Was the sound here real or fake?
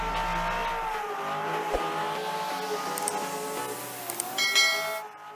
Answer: real